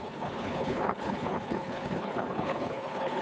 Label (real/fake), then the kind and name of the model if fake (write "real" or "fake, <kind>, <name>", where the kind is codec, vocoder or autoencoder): fake, codec, HILCodec